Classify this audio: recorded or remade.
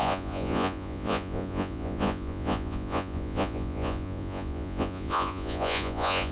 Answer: remade